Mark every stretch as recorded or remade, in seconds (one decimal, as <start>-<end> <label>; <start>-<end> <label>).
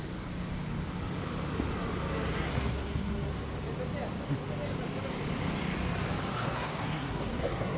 0.0-2.3 recorded; 2.3-3.3 remade; 3.3-6.3 recorded; 6.3-7.8 remade